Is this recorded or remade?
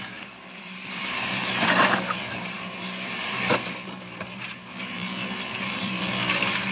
remade